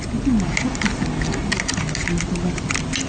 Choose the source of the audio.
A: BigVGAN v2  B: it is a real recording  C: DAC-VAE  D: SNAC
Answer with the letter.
B